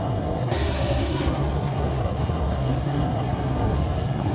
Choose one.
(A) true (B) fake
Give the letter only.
B